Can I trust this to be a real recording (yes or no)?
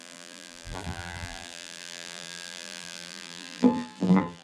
no